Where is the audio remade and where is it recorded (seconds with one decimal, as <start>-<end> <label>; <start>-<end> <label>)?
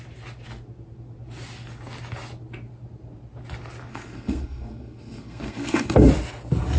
0.0-3.9 recorded; 3.9-6.1 remade; 6.1-6.8 recorded